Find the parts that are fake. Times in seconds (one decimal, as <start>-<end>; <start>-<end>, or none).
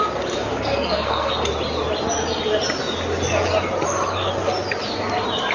0.5-1.3